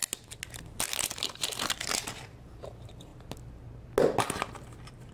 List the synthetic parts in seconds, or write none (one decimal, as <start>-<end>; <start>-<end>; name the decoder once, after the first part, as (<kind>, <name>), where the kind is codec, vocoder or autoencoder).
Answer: 2.1-3.1 (vocoder, BigVGAN v2)